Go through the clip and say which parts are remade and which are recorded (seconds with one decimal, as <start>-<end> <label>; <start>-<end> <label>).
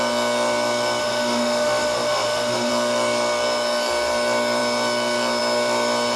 0.0-1.0 recorded; 1.0-2.7 remade; 2.7-6.2 recorded